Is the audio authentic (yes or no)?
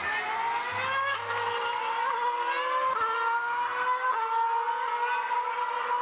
yes